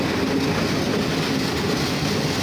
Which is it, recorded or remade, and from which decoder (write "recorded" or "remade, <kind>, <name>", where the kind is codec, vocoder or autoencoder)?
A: recorded